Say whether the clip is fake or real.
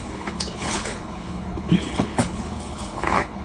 fake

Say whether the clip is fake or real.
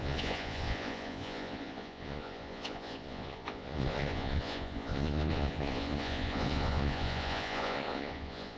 fake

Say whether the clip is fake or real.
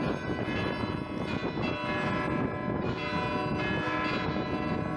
real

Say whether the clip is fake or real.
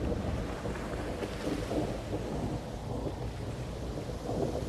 real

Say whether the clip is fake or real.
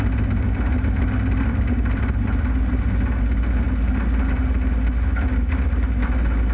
real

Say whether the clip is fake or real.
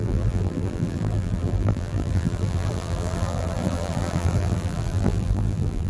fake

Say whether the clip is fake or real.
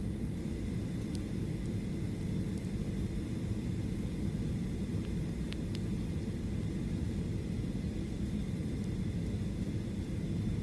real